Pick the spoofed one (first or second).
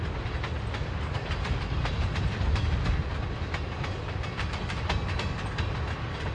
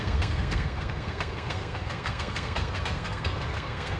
second